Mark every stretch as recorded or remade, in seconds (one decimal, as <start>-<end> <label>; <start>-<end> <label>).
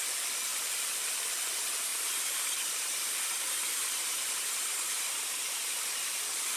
0.0-1.9 recorded; 1.9-5.9 remade; 5.9-6.6 recorded